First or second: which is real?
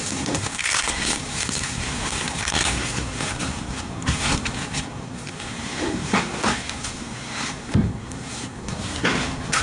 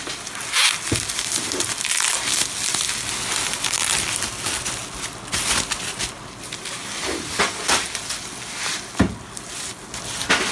second